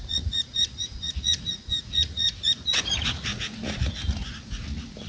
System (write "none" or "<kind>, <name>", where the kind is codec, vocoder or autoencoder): vocoder, Vocos